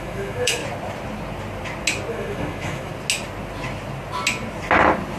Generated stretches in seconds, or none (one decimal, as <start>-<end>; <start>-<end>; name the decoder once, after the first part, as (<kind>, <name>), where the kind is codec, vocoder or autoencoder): 0.0-0.6 (autoencoder, DAC-VAE); 2.1-2.9